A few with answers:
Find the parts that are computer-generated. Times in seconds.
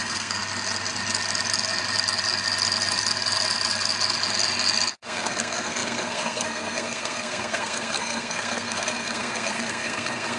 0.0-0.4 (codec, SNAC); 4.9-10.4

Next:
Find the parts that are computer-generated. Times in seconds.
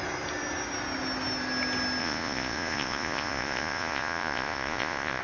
2.0-5.2 (vocoder, Vocos)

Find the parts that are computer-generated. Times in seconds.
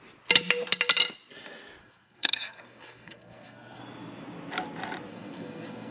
1.8-3.8 (codec, SNAC); 5.1-5.9